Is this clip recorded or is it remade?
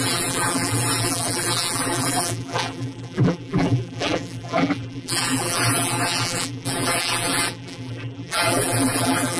remade